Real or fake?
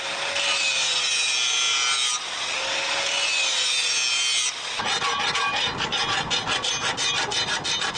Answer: real